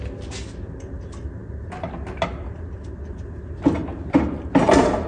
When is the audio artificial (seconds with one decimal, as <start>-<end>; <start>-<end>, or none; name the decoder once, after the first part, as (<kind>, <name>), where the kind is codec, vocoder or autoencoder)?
none